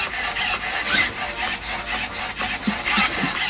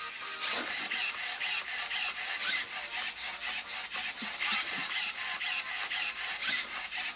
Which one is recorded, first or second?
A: first